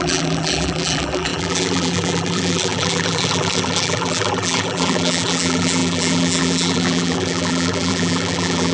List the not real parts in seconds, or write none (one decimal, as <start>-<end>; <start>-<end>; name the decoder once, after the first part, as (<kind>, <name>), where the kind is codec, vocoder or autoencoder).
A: 0.0-8.7 (vocoder, BigVGAN v2)

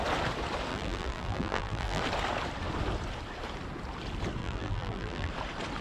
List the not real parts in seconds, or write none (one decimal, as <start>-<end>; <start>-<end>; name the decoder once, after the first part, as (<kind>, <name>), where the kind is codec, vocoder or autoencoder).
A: 0.7-2.0 (vocoder, BigVGAN v2); 4.4-5.3

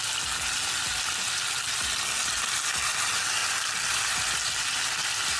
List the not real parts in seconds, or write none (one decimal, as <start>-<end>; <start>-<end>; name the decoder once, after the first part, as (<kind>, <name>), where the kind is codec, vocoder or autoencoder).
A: 3.4-4.1 (vocoder, BigVGAN v2)

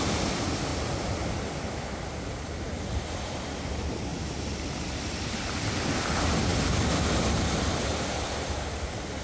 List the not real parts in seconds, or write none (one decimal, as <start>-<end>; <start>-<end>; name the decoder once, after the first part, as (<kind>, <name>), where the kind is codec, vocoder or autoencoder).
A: 0.0-0.7 (vocoder, BigVGAN v2); 3.0-9.2

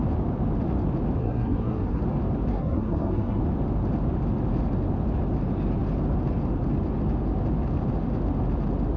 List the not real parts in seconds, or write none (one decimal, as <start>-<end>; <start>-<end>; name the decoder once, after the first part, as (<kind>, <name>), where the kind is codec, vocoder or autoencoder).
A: 1.2-2.0 (codec, SNAC); 2.5-3.4

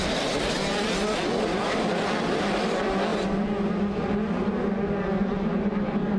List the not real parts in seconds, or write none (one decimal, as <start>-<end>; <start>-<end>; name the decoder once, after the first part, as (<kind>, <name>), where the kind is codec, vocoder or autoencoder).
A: none

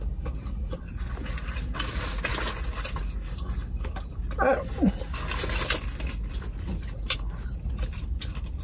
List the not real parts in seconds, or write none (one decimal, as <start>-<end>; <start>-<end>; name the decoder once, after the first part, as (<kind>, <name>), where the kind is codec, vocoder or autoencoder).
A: none

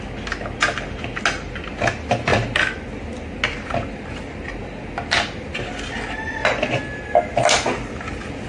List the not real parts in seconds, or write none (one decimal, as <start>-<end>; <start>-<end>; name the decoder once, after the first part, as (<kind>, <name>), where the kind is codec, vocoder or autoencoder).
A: none